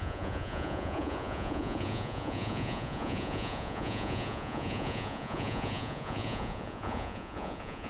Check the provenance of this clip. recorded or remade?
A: remade